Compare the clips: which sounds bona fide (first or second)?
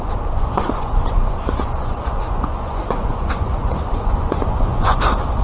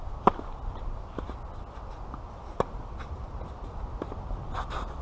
second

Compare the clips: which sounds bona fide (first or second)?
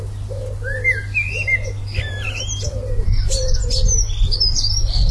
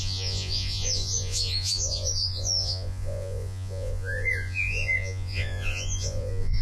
first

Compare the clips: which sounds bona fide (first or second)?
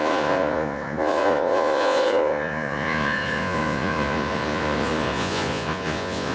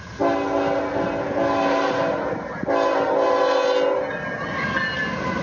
second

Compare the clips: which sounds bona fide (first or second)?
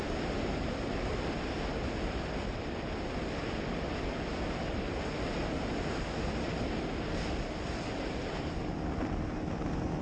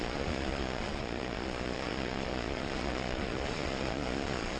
first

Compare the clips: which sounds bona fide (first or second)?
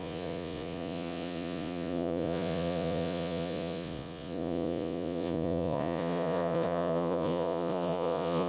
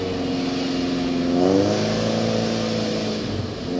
second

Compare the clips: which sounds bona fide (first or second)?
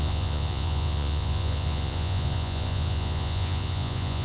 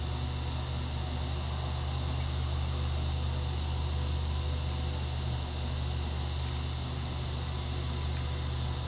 second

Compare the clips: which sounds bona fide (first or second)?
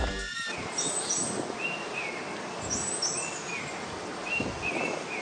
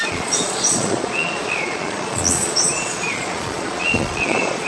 first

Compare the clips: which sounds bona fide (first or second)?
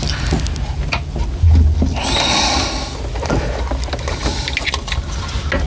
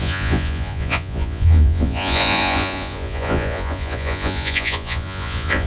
first